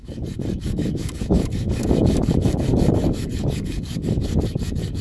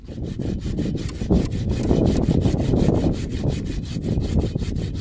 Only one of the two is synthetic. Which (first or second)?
first